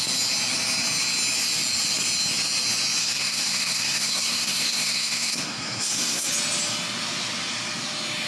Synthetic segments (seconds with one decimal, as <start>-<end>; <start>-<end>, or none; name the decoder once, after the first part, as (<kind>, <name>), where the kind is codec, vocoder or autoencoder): 3.0-6.3 (codec, SNAC)